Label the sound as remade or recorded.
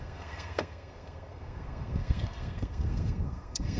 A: remade